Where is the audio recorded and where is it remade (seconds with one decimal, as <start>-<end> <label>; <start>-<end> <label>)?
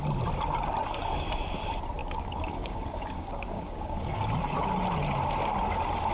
0.0-2.0 recorded; 2.0-4.3 remade; 4.3-6.1 recorded